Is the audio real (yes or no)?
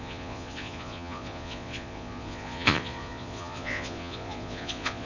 no